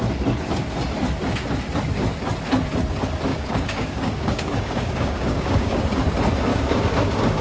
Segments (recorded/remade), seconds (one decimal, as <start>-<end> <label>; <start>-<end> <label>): 0.0-3.3 recorded; 3.3-5.8 remade; 5.8-6.5 recorded; 6.5-7.4 remade